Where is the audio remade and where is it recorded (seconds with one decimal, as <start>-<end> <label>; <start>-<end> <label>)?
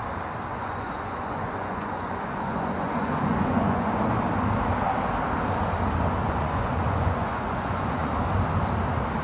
0.0-0.5 recorded; 0.5-3.9 remade; 3.9-6.2 recorded; 6.2-8.1 remade; 8.1-9.2 recorded